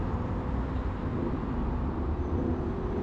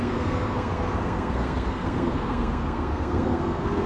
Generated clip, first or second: second